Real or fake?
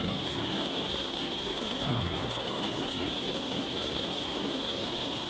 fake